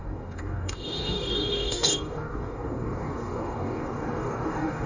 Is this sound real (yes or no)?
no